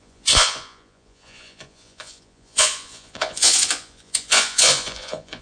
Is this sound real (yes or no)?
no